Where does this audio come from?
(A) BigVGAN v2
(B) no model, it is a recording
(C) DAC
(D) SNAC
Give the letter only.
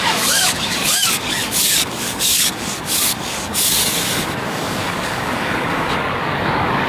C